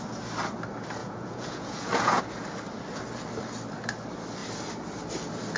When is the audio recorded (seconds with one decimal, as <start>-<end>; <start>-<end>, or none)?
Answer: 0.0-1.0; 2.2-5.6